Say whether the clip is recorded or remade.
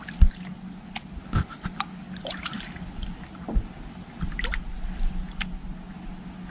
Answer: recorded